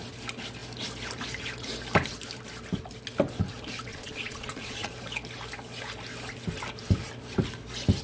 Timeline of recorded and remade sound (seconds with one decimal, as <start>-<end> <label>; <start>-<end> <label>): 0.0-3.9 recorded; 3.9-4.9 remade; 4.9-8.0 recorded